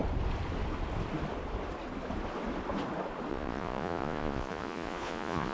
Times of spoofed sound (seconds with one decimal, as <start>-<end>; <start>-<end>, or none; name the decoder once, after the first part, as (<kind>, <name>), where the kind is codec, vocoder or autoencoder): 3.3-5.5 (vocoder, Vocos)